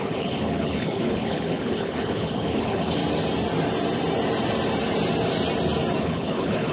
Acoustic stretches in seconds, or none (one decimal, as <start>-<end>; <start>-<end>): 3.0-6.0